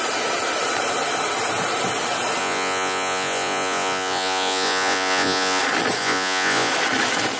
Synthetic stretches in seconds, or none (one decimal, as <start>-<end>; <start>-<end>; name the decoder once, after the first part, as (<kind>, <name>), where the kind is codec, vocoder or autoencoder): 2.4-5.6 (vocoder, Vocos); 6.0-6.7